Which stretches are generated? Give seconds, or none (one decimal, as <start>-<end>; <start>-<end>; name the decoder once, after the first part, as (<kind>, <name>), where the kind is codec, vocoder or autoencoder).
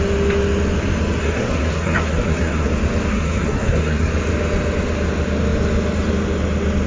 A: 1.2-2.7 (codec, SNAC); 3.1-4.1